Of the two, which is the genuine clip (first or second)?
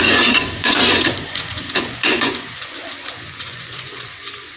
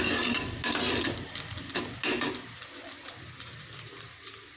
second